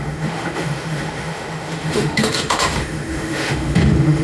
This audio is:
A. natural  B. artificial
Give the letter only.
B